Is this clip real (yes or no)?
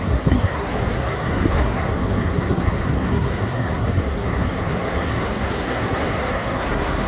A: no